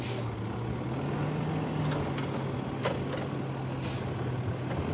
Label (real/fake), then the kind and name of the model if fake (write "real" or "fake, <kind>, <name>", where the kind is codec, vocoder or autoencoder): real